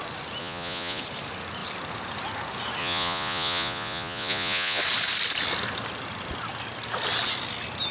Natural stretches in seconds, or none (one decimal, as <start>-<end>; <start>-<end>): 0.0-0.4; 1.0-2.8; 4.8-7.9